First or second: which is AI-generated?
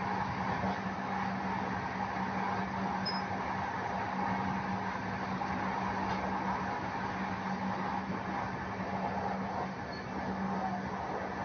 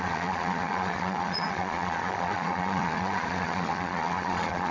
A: second